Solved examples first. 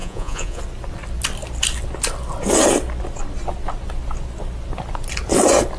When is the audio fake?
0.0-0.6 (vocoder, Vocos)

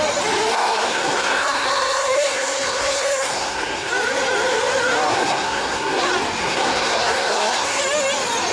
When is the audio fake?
0.5-3.9 (codec, SNAC); 5.1-6.0; 6.4-7.8

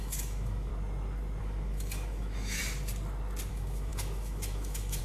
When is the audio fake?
0.0-0.7 (autoencoder, DAC-VAE); 1.4-2.6; 3.5-5.0

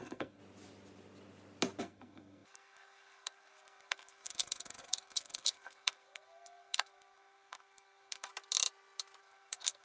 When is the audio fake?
0.0-0.4 (codec, SNAC); 1.8-8.3; 9.2-9.8